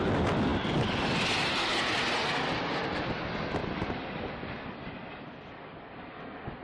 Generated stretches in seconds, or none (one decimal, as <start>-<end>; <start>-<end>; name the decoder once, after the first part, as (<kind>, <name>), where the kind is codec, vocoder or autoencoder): none